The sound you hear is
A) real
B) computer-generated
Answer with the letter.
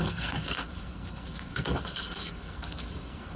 B